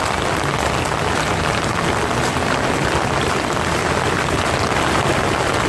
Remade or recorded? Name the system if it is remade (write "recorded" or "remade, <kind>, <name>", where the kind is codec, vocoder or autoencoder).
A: recorded